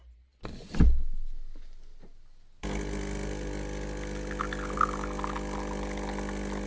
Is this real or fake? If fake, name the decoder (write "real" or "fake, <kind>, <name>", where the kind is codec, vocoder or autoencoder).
real